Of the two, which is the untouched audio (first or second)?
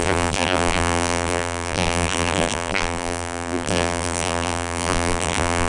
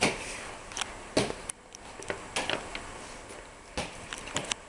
second